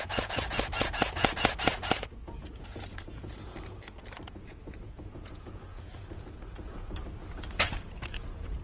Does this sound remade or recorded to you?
remade